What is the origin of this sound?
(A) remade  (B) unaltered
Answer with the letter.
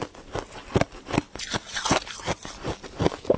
B